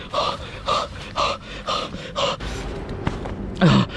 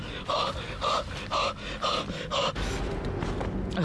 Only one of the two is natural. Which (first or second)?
second